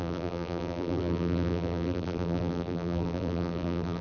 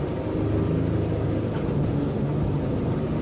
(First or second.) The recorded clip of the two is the second